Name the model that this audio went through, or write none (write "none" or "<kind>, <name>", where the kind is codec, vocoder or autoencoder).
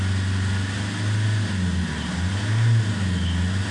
none